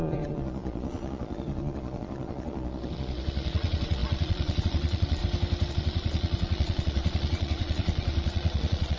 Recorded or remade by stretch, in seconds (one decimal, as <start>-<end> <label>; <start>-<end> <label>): 0.0-5.2 remade; 5.2-5.7 recorded; 5.7-9.0 remade